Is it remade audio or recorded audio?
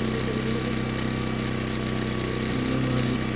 recorded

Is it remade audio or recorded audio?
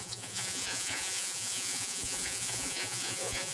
remade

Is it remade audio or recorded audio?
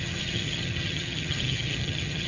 remade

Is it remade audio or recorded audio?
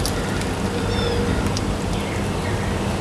recorded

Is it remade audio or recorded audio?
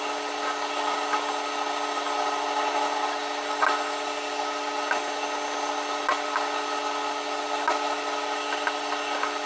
recorded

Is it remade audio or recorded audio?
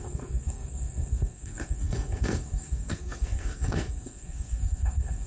remade